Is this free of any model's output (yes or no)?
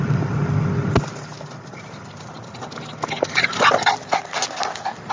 yes